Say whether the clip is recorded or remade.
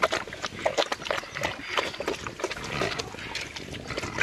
recorded